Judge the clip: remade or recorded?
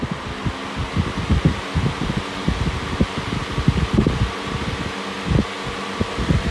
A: recorded